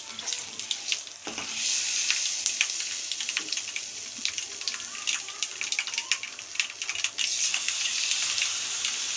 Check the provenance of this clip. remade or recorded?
recorded